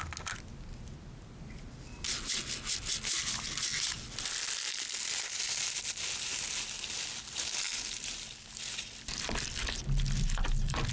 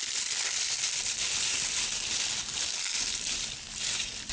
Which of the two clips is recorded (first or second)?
first